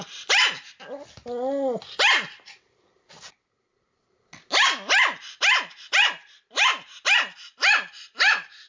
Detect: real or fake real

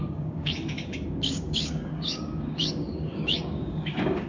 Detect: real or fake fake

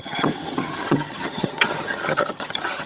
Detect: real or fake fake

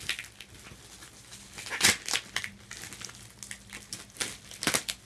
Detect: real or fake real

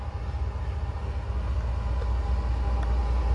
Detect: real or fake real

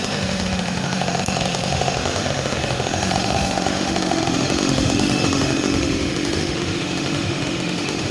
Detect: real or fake fake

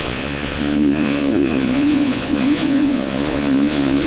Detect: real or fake fake